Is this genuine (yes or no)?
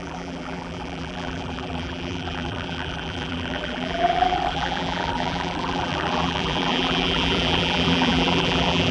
no